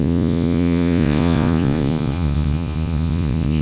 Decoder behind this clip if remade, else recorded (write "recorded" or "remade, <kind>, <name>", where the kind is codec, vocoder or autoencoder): remade, vocoder, Vocos